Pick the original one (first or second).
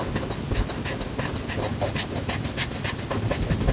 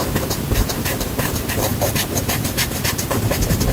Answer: first